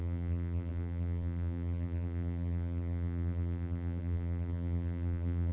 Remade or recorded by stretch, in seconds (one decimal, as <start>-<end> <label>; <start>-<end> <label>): 0.0-5.5 remade